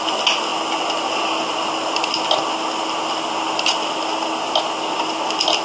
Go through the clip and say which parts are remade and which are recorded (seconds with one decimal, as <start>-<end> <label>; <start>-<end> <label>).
0.0-5.6 recorded